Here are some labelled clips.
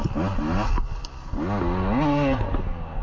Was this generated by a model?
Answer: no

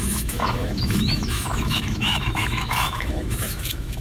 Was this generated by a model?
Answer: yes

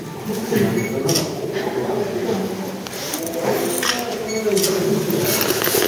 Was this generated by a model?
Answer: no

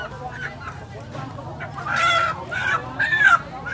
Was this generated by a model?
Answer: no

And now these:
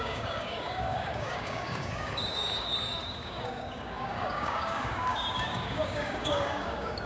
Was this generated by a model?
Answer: yes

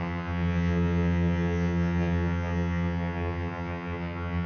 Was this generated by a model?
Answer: yes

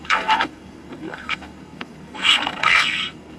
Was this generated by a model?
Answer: yes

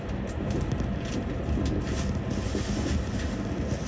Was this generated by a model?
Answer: no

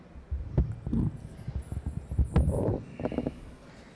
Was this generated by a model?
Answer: no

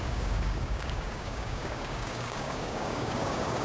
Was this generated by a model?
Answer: yes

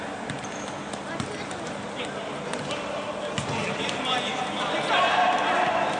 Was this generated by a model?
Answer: no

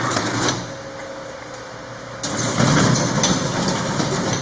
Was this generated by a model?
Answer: no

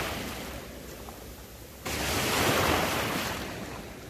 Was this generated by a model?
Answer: no